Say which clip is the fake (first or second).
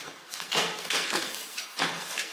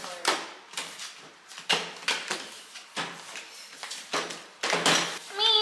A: first